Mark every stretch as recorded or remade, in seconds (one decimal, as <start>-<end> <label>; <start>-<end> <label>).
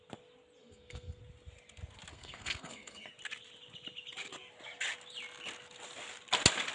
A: 0.0-0.6 recorded; 0.6-1.2 remade; 1.2-2.1 recorded; 2.1-3.1 remade; 3.1-6.7 recorded